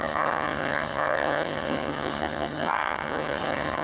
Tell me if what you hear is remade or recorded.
remade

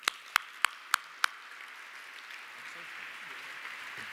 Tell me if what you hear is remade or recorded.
recorded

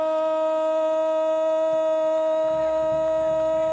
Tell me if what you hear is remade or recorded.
recorded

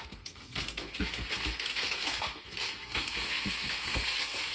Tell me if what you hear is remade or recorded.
remade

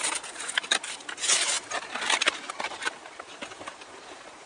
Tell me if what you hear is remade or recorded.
remade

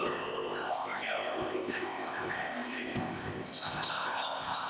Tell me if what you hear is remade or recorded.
remade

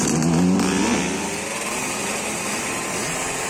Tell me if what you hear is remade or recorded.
recorded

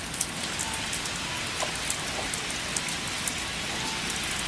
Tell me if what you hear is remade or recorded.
recorded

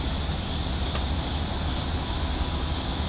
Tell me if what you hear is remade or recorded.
recorded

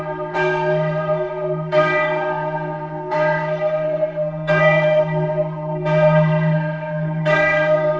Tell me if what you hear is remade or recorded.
remade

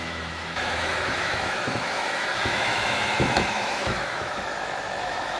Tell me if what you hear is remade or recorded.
remade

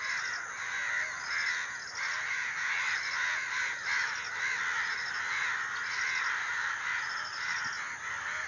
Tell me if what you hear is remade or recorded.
recorded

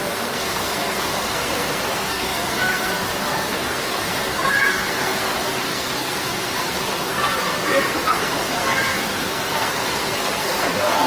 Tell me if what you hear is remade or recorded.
remade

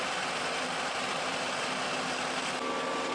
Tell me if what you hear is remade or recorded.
recorded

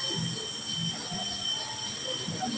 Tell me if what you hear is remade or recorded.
recorded